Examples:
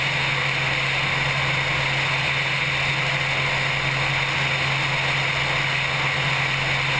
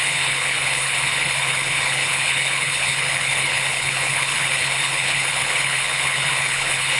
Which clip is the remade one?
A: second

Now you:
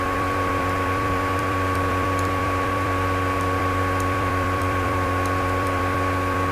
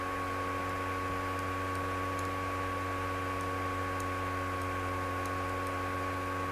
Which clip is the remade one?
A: first